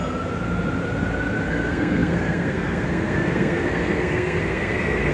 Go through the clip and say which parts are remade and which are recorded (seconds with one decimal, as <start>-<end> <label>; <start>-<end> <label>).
0.0-1.5 recorded; 1.5-5.1 remade